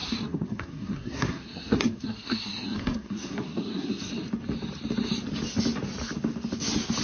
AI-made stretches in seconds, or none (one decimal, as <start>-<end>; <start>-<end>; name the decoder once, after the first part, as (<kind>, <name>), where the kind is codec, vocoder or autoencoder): 0.0-4.1 (codec, SNAC)